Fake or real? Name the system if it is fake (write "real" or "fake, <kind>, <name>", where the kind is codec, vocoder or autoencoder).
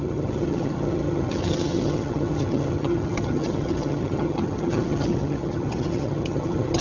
fake, vocoder, HiFi-GAN